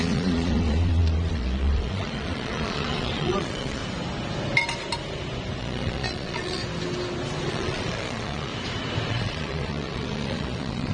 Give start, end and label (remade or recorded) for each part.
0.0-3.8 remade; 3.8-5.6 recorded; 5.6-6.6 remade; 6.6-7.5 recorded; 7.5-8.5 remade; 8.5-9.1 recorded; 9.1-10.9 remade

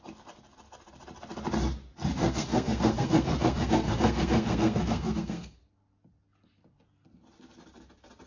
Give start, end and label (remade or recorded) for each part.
0.0-2.2 recorded; 2.2-5.6 remade; 5.6-8.3 recorded

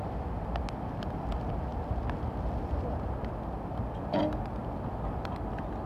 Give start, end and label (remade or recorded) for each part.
0.0-5.9 recorded

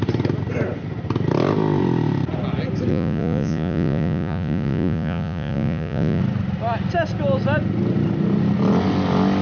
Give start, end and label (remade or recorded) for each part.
0.0-2.9 recorded; 2.9-6.2 remade; 6.2-9.4 recorded